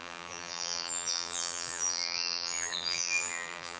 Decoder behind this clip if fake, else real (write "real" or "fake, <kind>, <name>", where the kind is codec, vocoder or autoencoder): fake, vocoder, BigVGAN v2